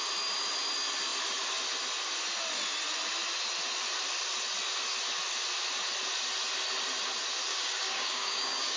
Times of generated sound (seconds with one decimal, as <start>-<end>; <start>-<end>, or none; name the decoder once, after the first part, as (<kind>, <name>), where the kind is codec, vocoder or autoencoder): 7.5-8.8 (codec, DAC)